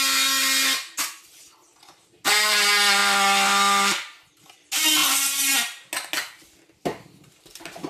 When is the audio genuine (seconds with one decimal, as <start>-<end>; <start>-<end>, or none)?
0.0-7.9